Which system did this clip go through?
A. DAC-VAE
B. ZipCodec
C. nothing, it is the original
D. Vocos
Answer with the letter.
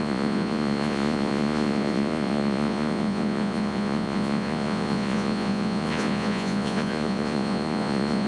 D